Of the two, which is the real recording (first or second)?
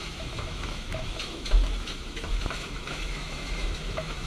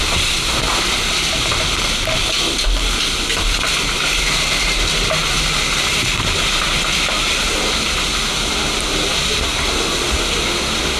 second